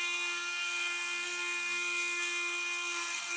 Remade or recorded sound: remade